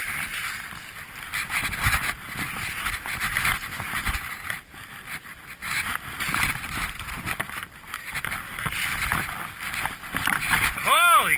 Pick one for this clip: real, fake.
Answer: fake